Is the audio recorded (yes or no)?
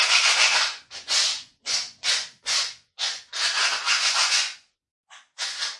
no